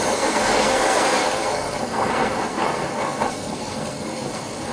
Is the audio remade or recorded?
remade